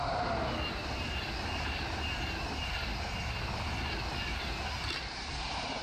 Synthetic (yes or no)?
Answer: no